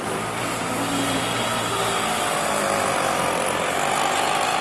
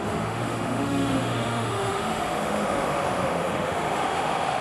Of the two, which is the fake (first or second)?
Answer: second